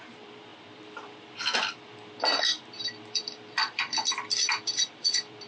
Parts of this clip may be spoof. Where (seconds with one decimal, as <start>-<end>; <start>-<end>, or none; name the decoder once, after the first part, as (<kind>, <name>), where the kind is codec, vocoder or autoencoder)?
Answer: 0.0-5.5 (vocoder, BigVGAN v2)